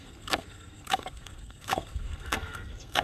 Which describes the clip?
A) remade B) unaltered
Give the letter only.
A